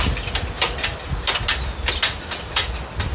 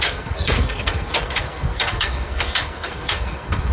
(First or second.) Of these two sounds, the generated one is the second